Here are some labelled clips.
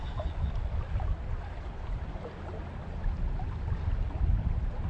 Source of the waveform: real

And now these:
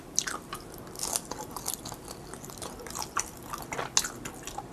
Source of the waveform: real